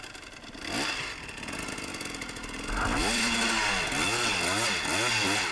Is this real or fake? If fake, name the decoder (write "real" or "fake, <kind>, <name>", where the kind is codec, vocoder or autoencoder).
real